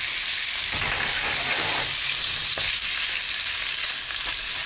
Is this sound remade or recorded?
recorded